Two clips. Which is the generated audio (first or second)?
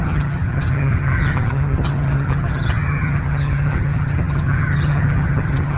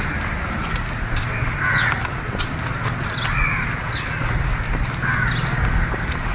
first